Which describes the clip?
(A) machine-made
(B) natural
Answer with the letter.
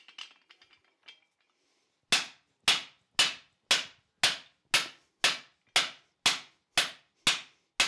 B